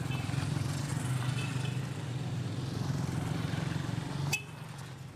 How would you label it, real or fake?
real